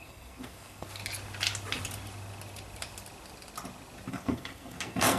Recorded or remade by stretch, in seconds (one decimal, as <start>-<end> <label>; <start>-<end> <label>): 0.0-1.0 remade; 1.0-4.1 recorded; 4.1-5.2 remade